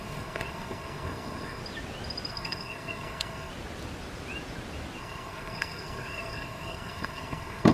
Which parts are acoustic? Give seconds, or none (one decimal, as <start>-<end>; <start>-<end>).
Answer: 1.6-2.3; 3.5-5.0